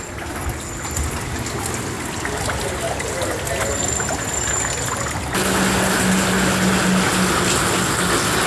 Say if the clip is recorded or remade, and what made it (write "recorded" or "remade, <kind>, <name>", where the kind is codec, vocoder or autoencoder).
recorded